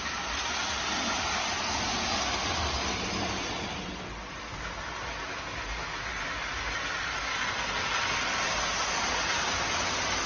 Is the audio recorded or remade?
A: recorded